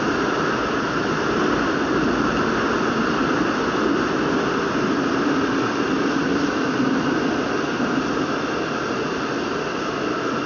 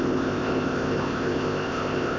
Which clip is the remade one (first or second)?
second